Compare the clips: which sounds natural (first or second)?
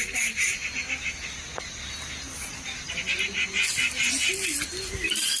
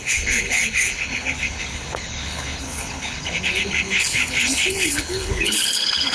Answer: first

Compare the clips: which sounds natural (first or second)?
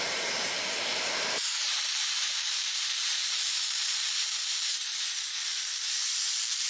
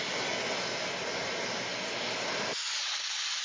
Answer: second